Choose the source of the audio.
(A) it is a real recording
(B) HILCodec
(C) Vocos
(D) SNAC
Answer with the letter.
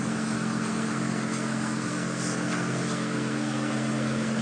D